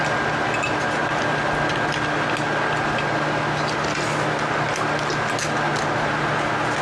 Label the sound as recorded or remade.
recorded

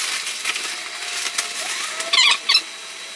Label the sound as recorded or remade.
recorded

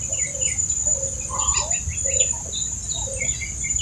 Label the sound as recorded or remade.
recorded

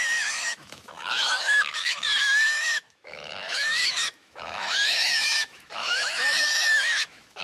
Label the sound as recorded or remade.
remade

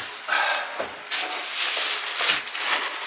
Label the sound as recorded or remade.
recorded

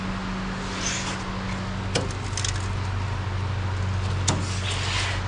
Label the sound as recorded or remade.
recorded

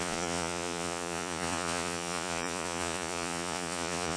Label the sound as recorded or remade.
remade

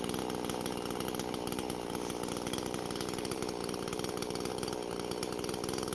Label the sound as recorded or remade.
recorded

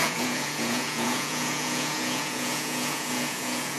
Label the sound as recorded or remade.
remade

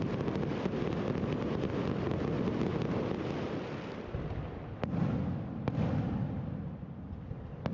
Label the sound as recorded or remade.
recorded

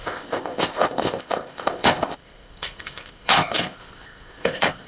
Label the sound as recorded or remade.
remade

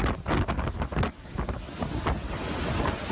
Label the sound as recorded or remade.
recorded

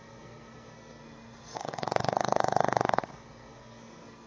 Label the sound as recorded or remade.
remade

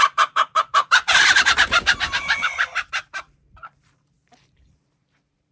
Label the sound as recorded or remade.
remade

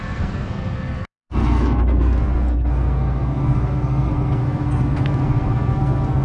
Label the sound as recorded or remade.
remade